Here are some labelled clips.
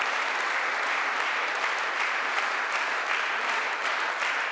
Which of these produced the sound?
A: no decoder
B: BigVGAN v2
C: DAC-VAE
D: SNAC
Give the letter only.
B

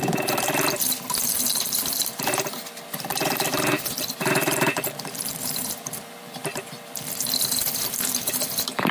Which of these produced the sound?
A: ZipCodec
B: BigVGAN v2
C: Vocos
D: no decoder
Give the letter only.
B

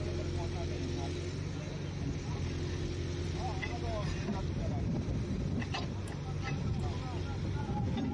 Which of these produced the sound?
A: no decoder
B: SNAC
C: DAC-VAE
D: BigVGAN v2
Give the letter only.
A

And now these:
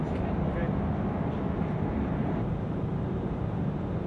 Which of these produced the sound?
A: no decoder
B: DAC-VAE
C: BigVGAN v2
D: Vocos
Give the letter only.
C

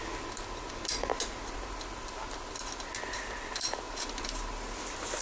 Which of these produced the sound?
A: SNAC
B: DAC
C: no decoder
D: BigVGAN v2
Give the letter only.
C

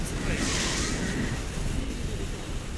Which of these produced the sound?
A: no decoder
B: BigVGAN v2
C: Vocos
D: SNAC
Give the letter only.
A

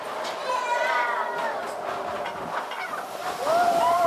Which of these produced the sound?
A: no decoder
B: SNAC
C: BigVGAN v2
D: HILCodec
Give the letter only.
A